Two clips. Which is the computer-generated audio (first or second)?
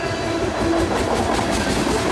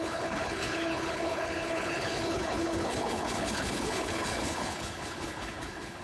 second